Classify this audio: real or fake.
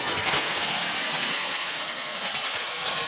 fake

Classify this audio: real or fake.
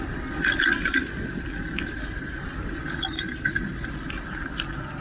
real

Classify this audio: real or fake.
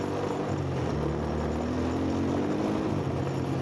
real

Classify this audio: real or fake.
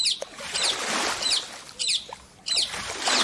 real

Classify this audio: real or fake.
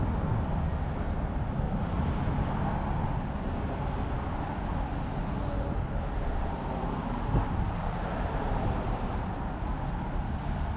real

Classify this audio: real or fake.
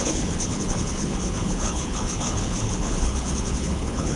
fake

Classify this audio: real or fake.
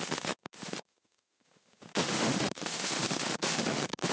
fake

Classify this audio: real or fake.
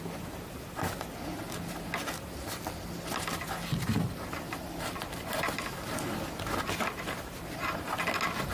real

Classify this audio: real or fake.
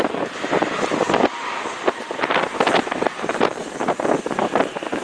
real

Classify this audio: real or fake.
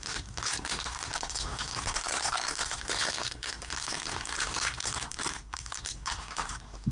fake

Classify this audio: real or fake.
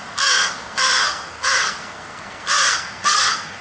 fake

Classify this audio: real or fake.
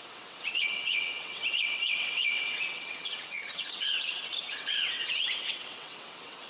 fake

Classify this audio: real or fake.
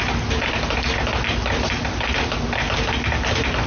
real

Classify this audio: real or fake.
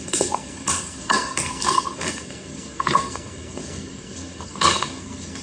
fake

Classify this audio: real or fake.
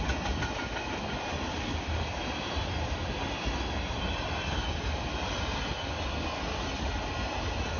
real